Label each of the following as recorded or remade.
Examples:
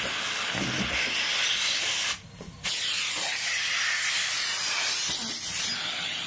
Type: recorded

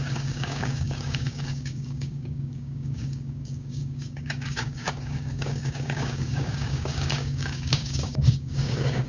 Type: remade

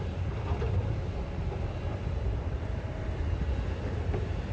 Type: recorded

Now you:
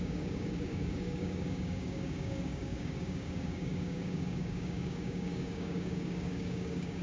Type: remade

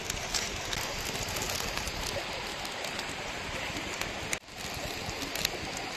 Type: recorded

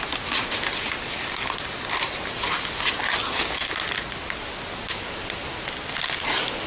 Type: recorded